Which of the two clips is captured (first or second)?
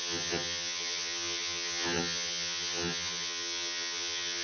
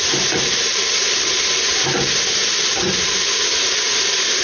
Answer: second